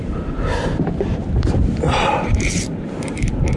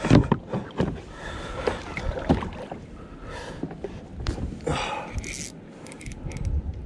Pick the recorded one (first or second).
second